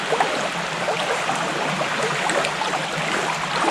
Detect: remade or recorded recorded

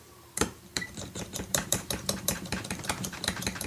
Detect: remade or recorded remade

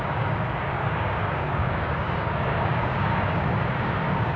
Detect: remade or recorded remade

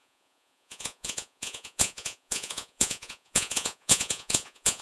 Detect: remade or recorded remade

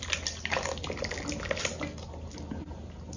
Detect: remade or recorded recorded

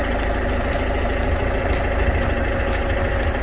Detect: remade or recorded recorded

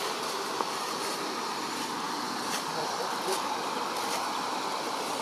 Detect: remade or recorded recorded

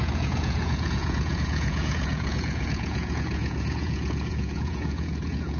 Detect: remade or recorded remade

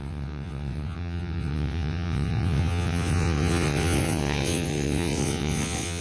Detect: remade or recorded remade